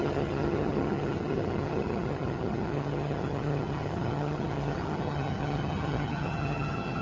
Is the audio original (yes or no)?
no